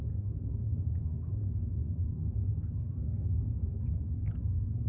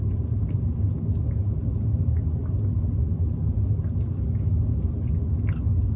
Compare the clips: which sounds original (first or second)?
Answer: second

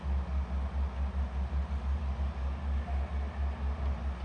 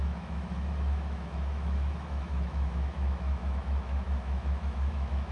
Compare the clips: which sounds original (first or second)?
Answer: first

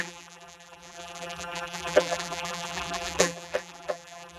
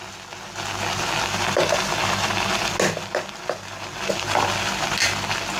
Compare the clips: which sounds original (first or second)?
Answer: second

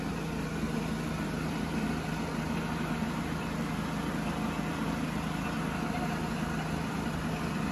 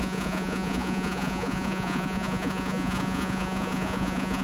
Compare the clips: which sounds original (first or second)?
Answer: first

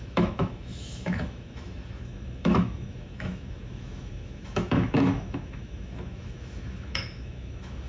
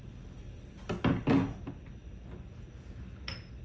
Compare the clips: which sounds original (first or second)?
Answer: second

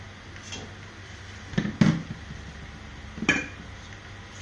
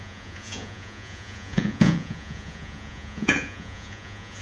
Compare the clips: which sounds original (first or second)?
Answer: first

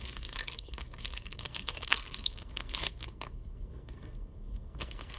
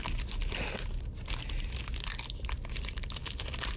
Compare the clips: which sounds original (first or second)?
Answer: second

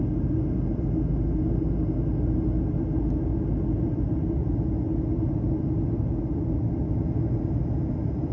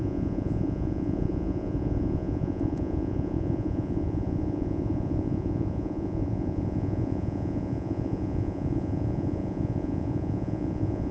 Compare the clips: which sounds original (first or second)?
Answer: first